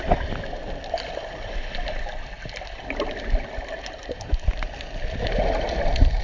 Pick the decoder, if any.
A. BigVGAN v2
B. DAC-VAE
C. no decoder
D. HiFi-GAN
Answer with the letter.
C